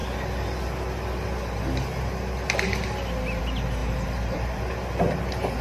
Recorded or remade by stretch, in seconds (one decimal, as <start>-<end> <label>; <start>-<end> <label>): 0.0-3.8 recorded; 3.8-4.6 remade; 4.6-5.6 recorded